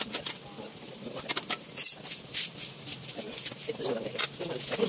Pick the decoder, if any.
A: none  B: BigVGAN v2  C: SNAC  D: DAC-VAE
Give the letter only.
A